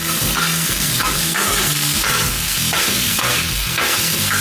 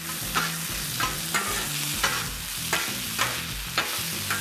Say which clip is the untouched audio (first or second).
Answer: second